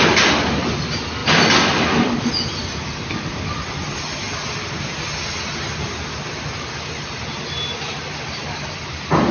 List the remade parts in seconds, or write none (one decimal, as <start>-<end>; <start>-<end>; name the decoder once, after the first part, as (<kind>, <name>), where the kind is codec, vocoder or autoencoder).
none